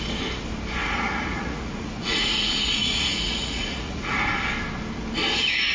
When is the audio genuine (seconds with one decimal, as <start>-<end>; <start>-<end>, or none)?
0.0-0.8; 4.2-5.7